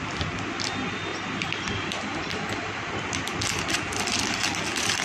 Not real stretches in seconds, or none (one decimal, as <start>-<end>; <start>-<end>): 1.1-3.0